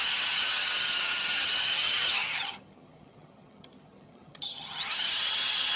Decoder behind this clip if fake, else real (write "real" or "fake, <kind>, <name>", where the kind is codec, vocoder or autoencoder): fake, vocoder, HiFi-GAN